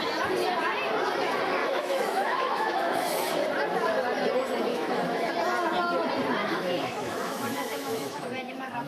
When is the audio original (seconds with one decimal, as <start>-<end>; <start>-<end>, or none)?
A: 0.0-1.6; 3.3-4.7; 5.3-6.4